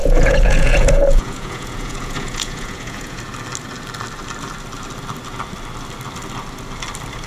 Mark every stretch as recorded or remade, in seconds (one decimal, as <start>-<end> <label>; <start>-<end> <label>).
0.0-3.2 remade; 3.2-7.3 recorded